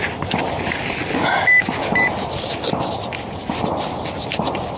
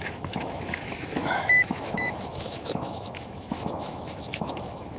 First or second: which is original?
first